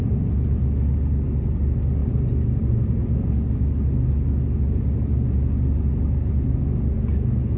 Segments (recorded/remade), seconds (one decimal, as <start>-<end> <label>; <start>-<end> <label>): 0.0-2.0 recorded; 2.0-3.0 remade; 3.0-7.6 recorded